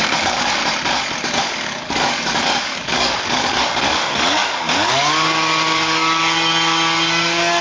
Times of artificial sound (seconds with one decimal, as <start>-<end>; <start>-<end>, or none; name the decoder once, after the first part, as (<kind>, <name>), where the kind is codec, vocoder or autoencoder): 0.0-0.6 (codec, DAC); 1.2-7.6